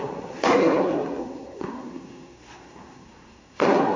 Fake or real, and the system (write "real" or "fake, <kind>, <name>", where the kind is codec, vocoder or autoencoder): fake, codec, SNAC